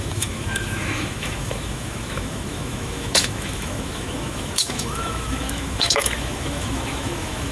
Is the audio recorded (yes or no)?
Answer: no